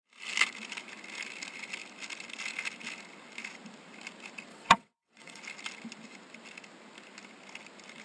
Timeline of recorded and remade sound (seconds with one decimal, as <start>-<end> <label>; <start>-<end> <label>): 0.0-4.5 recorded; 4.5-5.4 remade; 5.4-8.0 recorded